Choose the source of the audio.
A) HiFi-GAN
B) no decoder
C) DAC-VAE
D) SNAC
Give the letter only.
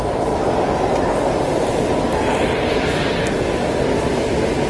B